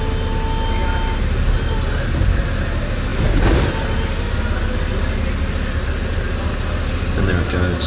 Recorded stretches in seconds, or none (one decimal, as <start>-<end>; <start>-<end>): 0.0-7.9